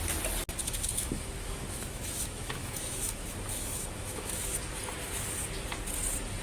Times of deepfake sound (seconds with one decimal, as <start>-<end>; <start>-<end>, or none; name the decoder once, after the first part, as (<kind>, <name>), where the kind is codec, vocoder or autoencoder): 0.6-4.4 (autoencoder, DAC-VAE)